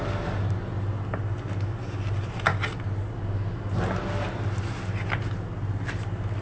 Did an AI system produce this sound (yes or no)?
no